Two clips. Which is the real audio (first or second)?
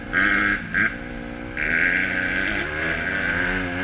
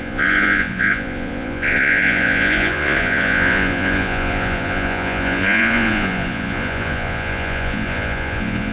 first